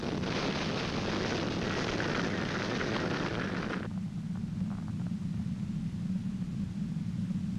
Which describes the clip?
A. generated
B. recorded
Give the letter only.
B